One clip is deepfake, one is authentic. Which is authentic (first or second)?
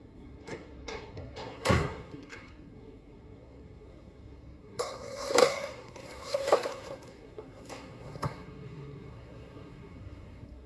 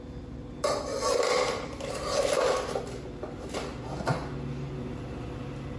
second